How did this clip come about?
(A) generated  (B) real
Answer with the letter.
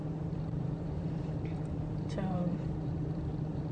A